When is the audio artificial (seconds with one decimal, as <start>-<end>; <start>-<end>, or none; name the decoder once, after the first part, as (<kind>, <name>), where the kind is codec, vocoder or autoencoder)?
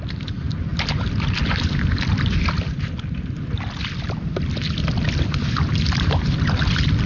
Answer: none